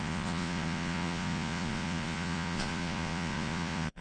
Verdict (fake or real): fake